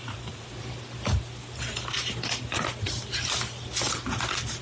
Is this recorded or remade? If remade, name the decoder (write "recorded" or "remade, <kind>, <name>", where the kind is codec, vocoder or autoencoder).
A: recorded